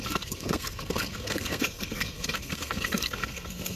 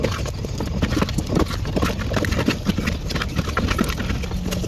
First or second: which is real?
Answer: second